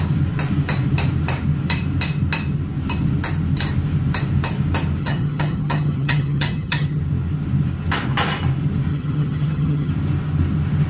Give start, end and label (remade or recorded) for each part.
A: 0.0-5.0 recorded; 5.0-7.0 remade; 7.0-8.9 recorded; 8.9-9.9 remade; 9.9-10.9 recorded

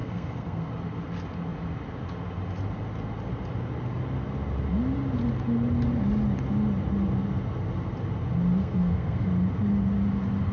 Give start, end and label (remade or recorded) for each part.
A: 0.0-0.7 remade; 0.7-8.6 recorded; 8.6-9.3 remade; 9.3-10.5 recorded

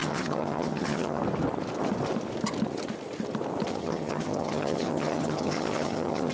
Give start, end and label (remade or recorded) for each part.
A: 0.0-1.2 remade; 1.2-3.7 recorded; 3.7-6.3 remade

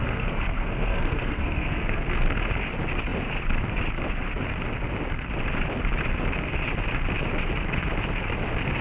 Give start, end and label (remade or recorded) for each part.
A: 0.0-2.2 remade; 2.2-8.8 recorded

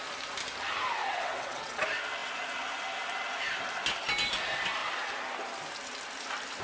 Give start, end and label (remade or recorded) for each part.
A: 0.0-1.0 recorded; 1.0-1.8 remade; 1.8-6.6 recorded

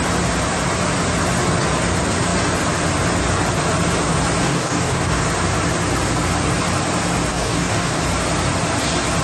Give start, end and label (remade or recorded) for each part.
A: 0.0-4.4 recorded; 4.4-5.2 remade; 5.2-7.3 recorded; 7.3-8.0 remade; 8.0-9.2 recorded

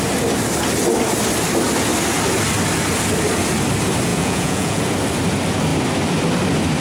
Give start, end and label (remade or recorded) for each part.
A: 0.0-4.1 recorded; 4.1-4.8 remade; 4.8-6.8 recorded

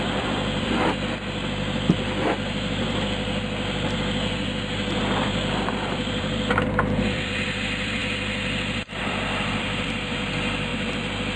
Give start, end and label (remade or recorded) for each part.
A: 0.0-1.4 remade; 1.4-5.0 recorded; 5.0-8.0 remade; 8.0-9.0 recorded; 9.0-10.7 remade; 10.7-11.4 recorded